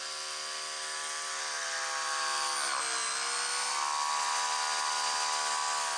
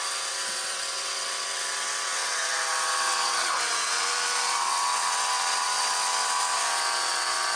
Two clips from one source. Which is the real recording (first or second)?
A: first